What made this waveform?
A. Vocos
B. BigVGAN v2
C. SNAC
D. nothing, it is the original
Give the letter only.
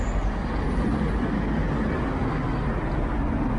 D